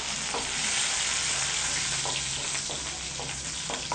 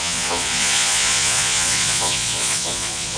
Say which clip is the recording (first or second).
first